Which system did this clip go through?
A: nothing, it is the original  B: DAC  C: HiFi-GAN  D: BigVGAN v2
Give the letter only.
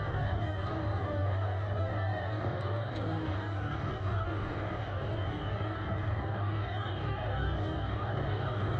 B